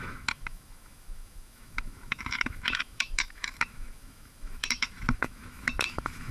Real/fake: fake